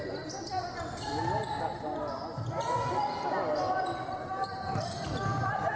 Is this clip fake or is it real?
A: real